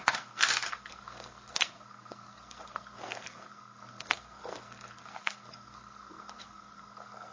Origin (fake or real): fake